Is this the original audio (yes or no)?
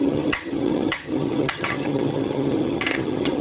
no